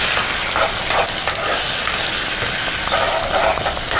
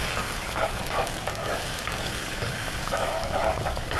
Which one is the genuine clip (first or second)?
first